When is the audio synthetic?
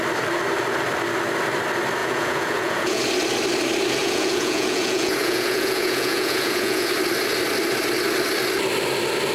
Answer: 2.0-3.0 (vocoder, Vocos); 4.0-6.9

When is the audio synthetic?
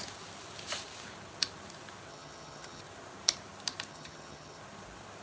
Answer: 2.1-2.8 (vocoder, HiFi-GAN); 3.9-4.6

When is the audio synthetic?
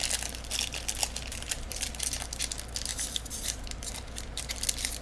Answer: 1.3-1.8 (vocoder, BigVGAN v2); 2.9-4.4